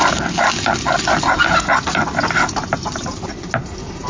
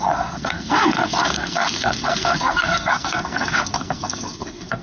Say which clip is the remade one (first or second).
second